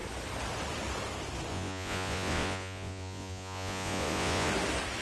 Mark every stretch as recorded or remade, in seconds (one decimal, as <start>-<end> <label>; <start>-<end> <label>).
0.0-1.5 recorded; 1.5-4.5 remade; 4.5-5.0 recorded